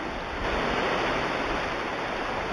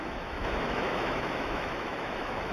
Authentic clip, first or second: first